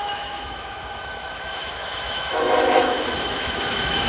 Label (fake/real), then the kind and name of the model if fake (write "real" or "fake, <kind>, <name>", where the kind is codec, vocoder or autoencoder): fake, autoencoder, DAC-VAE